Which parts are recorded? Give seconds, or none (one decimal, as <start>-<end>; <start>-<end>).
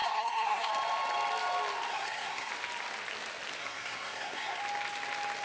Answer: 0.7-1.9; 2.5-3.6; 4.6-5.4